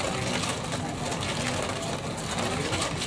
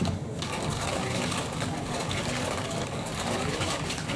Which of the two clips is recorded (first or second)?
first